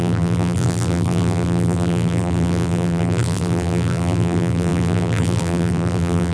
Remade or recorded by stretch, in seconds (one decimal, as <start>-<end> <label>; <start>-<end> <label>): 0.0-6.3 remade